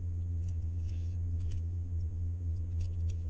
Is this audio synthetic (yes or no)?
yes